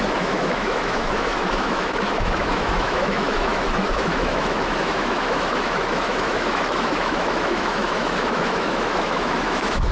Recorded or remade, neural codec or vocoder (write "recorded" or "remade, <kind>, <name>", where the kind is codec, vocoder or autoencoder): remade, autoencoder, DAC-VAE